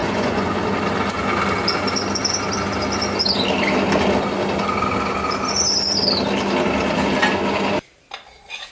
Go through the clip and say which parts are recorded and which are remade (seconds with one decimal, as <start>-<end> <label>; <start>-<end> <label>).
0.0-0.6 remade; 0.6-8.7 recorded